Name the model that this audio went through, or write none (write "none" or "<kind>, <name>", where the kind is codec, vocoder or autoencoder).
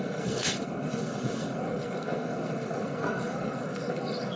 codec, SNAC